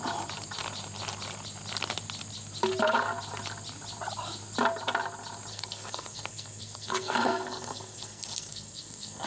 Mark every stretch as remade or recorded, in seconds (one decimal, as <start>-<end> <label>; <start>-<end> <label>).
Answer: 0.0-5.5 recorded; 5.5-9.3 remade

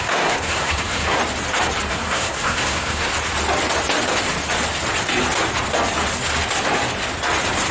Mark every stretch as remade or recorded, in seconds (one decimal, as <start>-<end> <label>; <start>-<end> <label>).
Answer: 0.0-1.2 remade; 1.2-1.9 recorded; 1.9-3.1 remade; 3.1-7.7 recorded